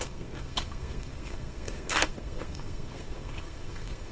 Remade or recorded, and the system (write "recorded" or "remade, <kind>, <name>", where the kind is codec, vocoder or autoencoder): remade, codec, SNAC